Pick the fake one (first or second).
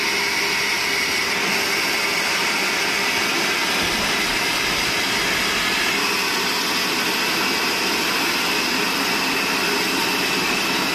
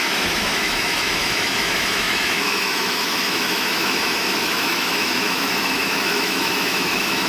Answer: second